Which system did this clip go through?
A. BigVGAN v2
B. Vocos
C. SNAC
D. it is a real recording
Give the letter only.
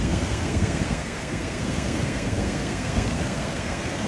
C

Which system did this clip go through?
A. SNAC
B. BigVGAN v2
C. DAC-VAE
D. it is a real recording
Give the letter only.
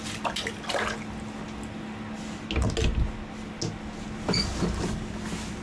D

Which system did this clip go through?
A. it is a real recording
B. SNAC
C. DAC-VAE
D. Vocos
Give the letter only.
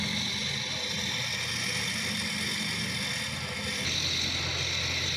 A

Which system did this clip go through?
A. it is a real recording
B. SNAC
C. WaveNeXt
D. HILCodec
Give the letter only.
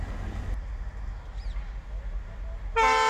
A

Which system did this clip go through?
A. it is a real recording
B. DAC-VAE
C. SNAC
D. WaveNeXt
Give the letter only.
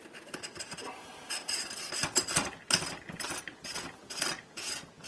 A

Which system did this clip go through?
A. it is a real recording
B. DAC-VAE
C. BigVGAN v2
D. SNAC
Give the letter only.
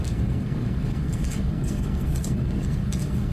D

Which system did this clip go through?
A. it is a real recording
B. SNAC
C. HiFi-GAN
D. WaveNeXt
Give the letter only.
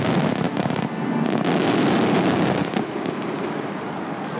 A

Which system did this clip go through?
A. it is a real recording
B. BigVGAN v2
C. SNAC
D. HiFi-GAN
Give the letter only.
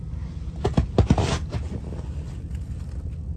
A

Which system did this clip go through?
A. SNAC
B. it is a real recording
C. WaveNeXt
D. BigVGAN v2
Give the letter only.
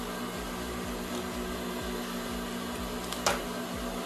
B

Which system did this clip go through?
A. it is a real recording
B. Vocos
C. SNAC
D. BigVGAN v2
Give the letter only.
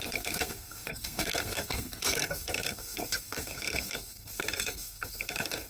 C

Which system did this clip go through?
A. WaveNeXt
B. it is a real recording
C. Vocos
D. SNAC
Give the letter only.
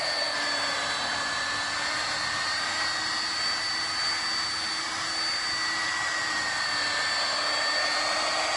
B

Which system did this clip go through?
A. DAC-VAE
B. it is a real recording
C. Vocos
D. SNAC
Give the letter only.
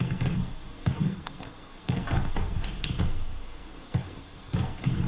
D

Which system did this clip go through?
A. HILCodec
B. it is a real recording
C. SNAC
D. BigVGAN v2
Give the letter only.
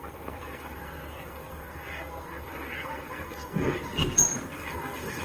C